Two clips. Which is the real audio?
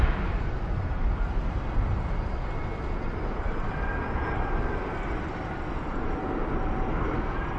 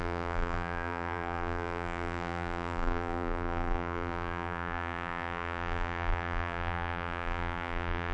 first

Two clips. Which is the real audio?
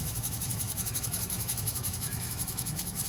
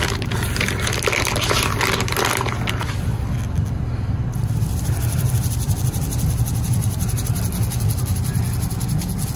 second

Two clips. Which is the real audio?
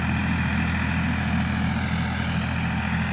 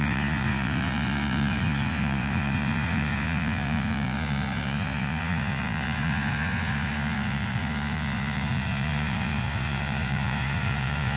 first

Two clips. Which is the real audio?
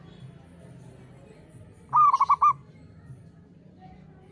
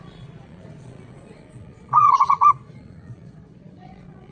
first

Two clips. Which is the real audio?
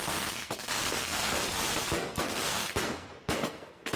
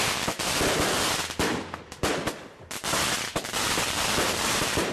second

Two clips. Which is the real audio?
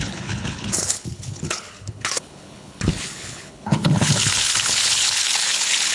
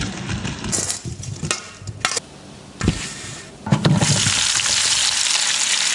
second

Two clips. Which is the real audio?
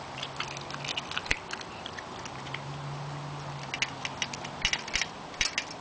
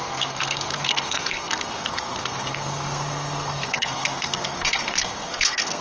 first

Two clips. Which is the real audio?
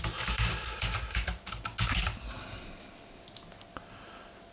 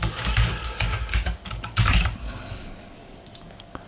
first